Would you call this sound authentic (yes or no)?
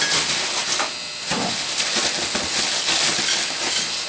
yes